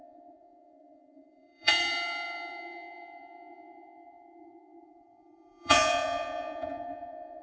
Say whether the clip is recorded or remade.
remade